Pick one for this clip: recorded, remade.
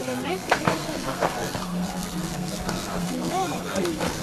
remade